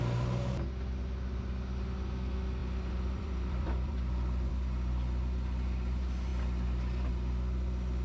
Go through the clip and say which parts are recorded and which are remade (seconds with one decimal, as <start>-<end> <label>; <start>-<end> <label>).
0.0-2.6 recorded; 2.6-4.5 remade; 4.5-6.3 recorded; 6.3-7.1 remade; 7.1-8.0 recorded